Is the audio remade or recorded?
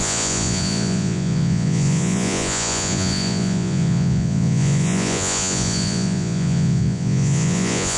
remade